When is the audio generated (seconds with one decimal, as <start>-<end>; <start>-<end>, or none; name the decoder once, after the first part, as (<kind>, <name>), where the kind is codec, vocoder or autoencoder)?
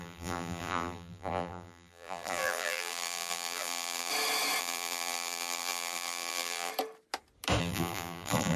0.0-4.1 (vocoder, BigVGAN v2); 4.6-6.7; 7.6-8.6